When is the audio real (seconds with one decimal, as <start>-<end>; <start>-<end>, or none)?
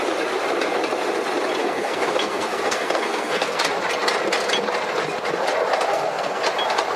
0.0-1.6; 3.6-5.9; 6.4-7.0